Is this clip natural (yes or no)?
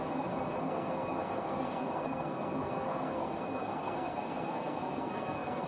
no